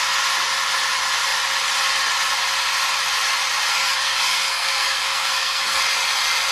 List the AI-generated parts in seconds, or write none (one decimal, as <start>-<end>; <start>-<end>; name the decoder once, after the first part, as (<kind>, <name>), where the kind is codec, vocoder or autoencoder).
3.7-5.8 (codec, SNAC)